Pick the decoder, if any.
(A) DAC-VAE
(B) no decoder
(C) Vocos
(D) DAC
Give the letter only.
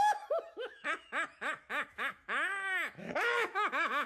A